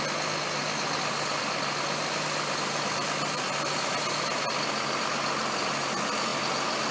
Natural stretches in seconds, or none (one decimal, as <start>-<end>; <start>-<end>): 0.0-6.9